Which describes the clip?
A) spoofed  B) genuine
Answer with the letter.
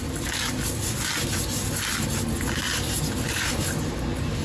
B